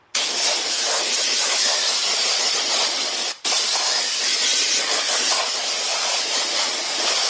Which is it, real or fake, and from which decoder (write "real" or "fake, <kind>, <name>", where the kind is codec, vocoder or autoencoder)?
real